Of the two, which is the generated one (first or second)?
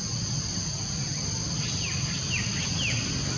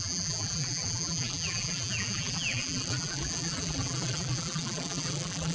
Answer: second